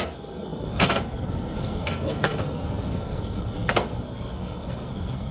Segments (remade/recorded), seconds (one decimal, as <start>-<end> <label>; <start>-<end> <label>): 0.0-5.3 remade